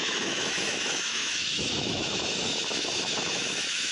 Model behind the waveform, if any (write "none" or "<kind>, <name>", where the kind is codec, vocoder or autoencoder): autoencoder, DAC-VAE